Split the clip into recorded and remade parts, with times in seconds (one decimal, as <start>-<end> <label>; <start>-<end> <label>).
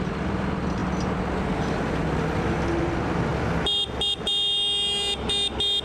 0.0-5.8 recorded